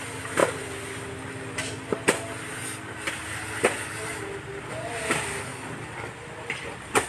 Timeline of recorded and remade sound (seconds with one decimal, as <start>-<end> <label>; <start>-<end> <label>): 0.0-7.1 recorded